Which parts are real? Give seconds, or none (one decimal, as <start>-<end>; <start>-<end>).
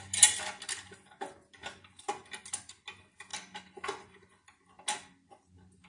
0.0-5.9